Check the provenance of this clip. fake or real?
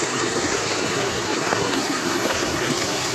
fake